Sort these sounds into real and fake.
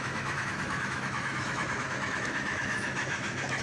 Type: fake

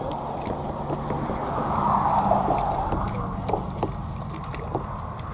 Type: real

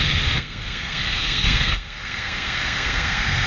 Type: fake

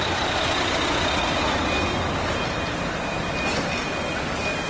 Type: real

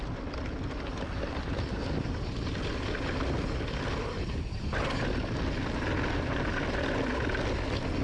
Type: real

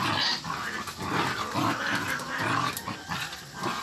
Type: real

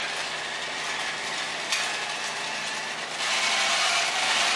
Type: real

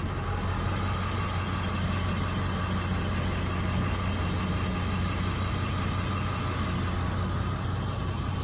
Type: real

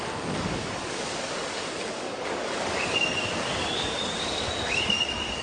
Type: fake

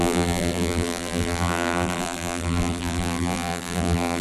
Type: fake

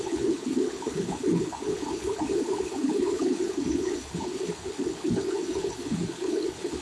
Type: fake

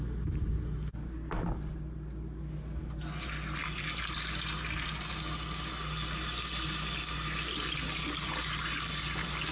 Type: real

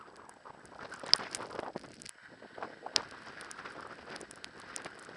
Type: real